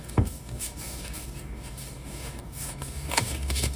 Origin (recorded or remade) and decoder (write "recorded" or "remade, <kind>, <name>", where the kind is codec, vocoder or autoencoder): remade, codec, DAC